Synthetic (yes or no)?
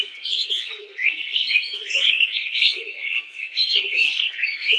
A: yes